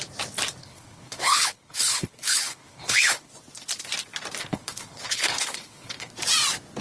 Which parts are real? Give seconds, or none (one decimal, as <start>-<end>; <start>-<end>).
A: 0.0-0.6; 3.3-4.4; 6.1-6.8